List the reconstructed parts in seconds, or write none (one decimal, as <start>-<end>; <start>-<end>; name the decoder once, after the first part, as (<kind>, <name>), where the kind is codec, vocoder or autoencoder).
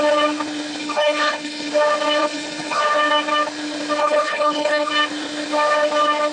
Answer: 0.8-1.7 (codec, HILCodec); 2.2-2.8; 4.0-4.9